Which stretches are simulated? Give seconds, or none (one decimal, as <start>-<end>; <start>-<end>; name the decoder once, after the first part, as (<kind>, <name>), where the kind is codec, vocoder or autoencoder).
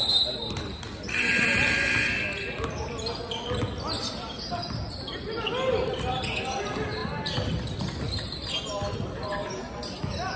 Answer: none